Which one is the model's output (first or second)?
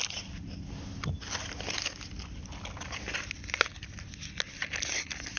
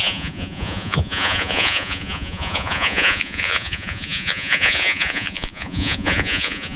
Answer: second